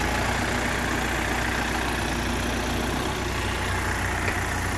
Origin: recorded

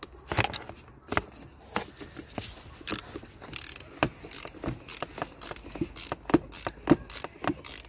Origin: recorded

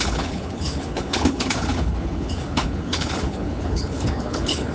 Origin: remade